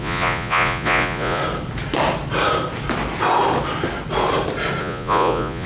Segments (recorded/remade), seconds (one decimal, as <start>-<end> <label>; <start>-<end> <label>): 0.0-1.4 remade; 1.4-4.8 recorded; 4.8-5.7 remade

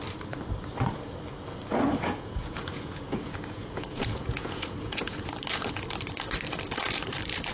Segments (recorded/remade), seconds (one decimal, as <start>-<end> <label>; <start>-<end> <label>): 0.0-1.7 recorded; 1.7-5.3 remade; 5.3-7.5 recorded